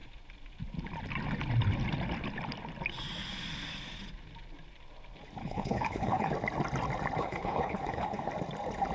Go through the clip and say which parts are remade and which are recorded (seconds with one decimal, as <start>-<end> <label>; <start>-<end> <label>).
0.0-5.4 recorded; 5.4-6.3 remade; 6.3-7.2 recorded; 7.2-8.3 remade; 8.3-8.9 recorded